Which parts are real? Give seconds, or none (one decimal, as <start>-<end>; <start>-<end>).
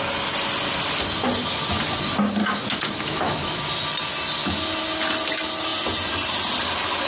0.0-2.4; 3.7-7.1